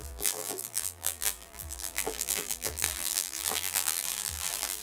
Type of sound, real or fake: fake